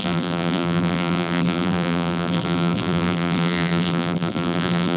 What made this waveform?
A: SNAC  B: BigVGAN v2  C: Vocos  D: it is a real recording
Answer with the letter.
B